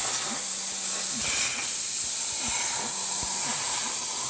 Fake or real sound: real